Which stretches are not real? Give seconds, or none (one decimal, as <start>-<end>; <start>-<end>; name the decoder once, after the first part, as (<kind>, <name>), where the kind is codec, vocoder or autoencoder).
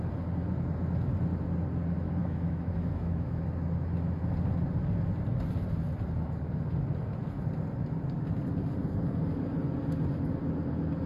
2.2-3.4 (autoencoder, DAC-VAE)